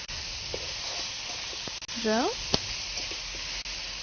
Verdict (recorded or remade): recorded